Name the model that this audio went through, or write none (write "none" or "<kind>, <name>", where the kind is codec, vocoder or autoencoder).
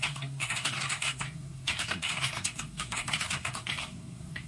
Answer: codec, SNAC